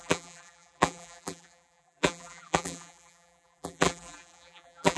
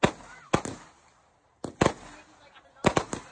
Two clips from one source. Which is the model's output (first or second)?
first